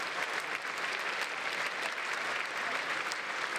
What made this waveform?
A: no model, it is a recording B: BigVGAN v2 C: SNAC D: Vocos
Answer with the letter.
A